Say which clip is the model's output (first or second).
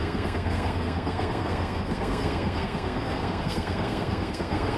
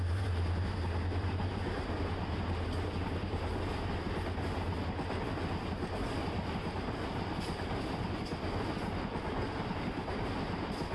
first